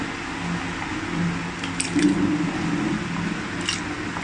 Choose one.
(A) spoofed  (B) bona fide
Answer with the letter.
B